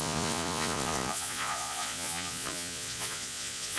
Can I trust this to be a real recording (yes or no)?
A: no